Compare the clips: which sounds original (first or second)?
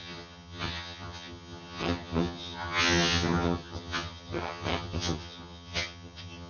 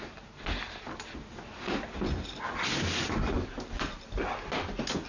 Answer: second